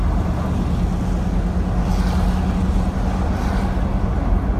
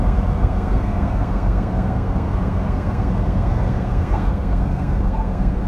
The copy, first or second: second